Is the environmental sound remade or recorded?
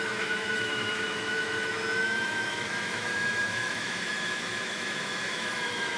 remade